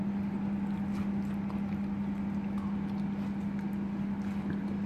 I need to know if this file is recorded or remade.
recorded